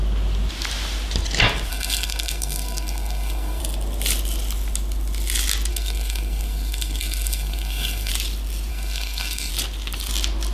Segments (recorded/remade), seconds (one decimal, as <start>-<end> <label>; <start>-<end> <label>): 0.0-1.7 recorded; 1.7-3.6 remade; 3.6-5.7 recorded; 5.7-8.1 remade; 8.1-8.7 recorded; 8.7-9.5 remade; 9.5-10.5 recorded